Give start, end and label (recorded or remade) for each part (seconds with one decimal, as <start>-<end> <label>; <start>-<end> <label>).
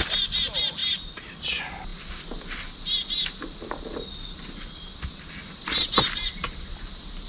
0.0-7.3 recorded